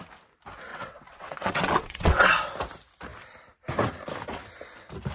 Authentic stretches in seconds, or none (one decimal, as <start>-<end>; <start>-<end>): 0.0-0.7; 2.3-5.1